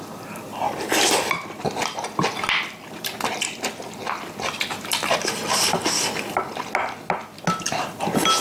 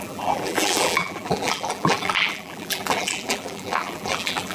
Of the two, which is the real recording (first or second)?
first